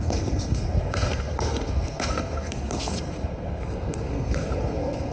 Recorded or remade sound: remade